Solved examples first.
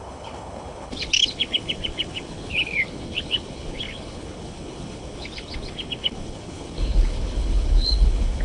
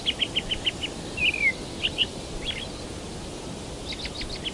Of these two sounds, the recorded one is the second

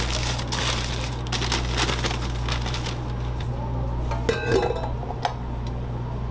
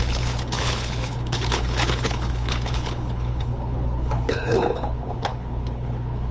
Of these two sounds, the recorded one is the first